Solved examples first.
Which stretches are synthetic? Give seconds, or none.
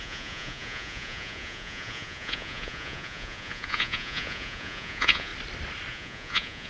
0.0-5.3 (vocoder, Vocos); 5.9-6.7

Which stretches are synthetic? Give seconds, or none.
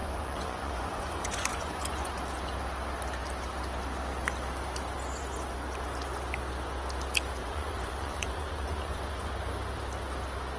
0.0-2.1 (vocoder, Vocos); 7.4-9.3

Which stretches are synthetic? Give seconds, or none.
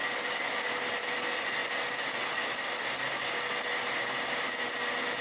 none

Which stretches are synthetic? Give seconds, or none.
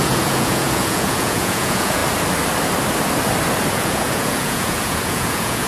0.0-2.0 (vocoder, Vocos); 3.7-5.7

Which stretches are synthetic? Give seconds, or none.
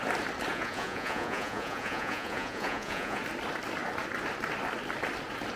0.5-3.2 (vocoder, Vocos)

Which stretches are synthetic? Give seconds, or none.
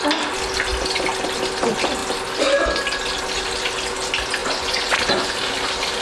4.4-5.3 (vocoder, Vocos)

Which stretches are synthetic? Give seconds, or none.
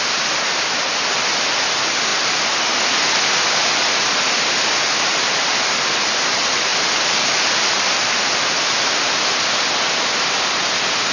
none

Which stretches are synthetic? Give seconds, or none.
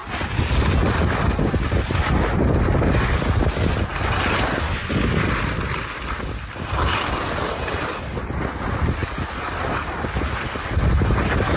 none